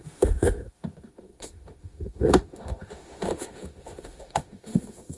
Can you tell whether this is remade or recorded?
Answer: remade